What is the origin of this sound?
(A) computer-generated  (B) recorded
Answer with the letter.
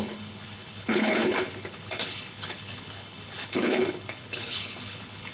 A